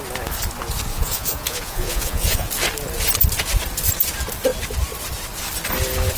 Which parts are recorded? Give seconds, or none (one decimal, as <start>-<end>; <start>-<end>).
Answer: 0.0-0.9; 2.5-6.2